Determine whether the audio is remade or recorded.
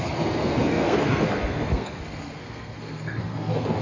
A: remade